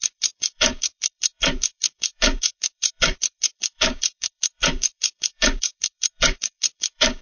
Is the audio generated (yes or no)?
yes